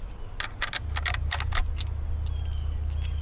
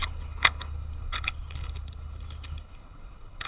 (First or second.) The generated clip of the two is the second